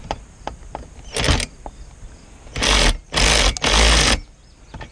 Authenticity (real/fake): real